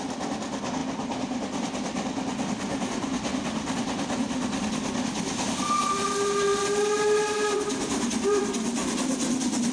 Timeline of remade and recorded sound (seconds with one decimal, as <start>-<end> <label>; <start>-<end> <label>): 0.0-9.7 recorded